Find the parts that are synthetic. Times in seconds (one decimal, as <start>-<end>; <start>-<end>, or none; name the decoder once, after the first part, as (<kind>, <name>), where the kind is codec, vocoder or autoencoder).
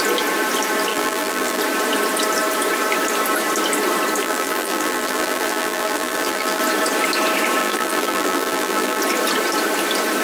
0.9-1.6 (vocoder, BigVGAN v2); 4.2-6.6; 7.6-9.0